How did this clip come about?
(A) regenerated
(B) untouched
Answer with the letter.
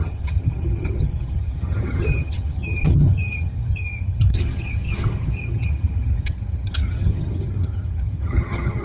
A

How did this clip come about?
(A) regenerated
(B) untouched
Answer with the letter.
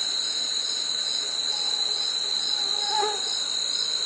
B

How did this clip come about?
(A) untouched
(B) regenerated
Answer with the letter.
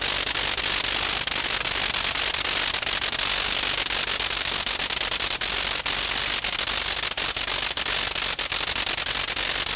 A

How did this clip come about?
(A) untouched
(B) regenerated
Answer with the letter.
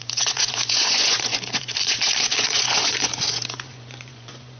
B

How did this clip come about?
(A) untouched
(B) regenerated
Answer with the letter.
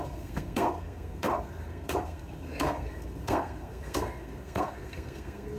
B